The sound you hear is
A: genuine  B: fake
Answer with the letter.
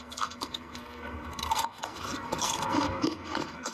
B